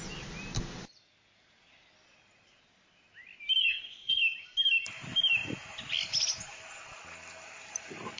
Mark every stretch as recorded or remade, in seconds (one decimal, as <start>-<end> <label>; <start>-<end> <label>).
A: 0.0-3.6 recorded; 3.6-4.2 remade; 4.2-8.2 recorded